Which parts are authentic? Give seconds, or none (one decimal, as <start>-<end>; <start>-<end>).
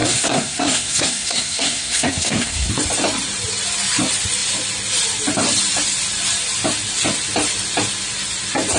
2.7-8.8